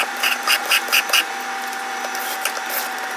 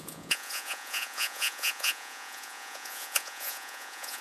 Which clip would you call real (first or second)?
first